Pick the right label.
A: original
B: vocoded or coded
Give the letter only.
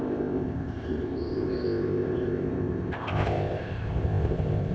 B